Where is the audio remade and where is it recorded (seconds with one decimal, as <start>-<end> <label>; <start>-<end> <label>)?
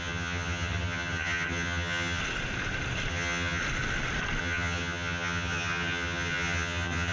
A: 0.0-2.2 remade; 2.2-3.1 recorded; 3.1-3.6 remade; 3.6-4.4 recorded; 4.4-7.1 remade